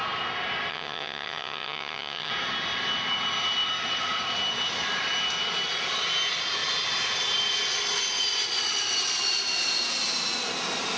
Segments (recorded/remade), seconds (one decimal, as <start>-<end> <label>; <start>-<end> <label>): 0.0-0.7 recorded; 0.7-2.3 remade; 2.3-11.0 recorded